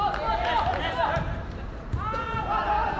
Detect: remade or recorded recorded